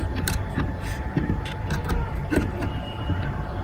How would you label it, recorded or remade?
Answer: recorded